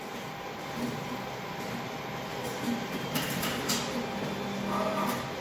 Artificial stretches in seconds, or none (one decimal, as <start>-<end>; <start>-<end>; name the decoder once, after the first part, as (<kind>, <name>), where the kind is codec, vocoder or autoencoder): 2.3-3.7 (vocoder, BigVGAN v2)